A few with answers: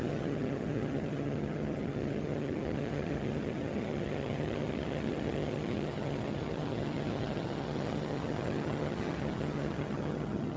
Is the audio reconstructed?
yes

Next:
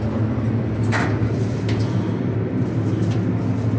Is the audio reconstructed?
no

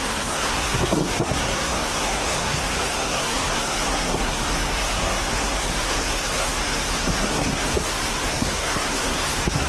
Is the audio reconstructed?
yes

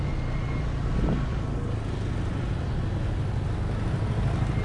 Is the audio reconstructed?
no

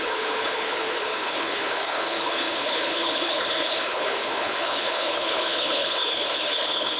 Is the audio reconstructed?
yes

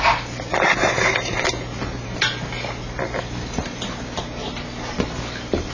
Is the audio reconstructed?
no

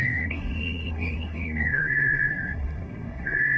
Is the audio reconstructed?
yes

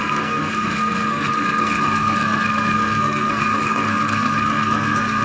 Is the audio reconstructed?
yes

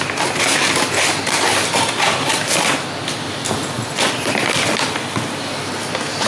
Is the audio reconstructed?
no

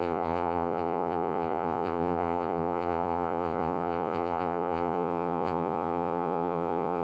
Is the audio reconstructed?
yes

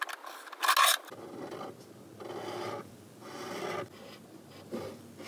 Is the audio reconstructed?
no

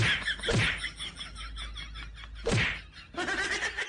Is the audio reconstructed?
no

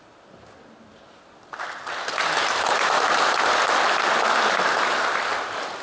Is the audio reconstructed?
no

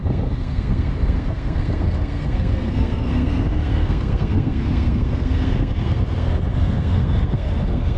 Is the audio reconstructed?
yes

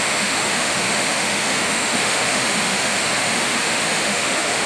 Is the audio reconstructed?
yes